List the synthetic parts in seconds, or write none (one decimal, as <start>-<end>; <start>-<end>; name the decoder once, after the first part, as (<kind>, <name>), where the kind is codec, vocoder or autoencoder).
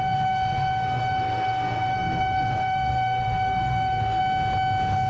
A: 0.0-4.2 (codec, SNAC)